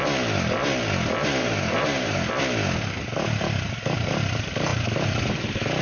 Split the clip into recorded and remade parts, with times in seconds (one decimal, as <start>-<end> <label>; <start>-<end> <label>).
0.0-1.4 recorded; 1.4-2.3 remade; 2.3-4.7 recorded; 4.7-5.8 remade